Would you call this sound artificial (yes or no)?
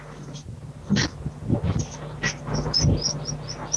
no